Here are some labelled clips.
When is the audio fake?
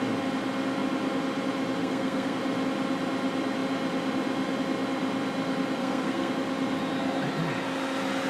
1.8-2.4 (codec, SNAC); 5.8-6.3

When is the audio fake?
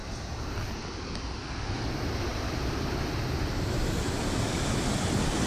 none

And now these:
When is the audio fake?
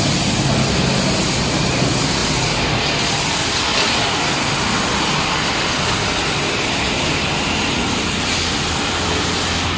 none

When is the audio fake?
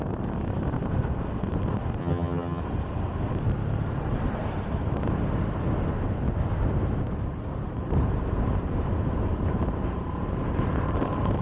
2.0-2.6 (vocoder, HiFi-GAN)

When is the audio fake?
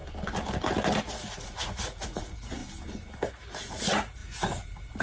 1.0-2.6 (vocoder, Vocos); 3.3-5.0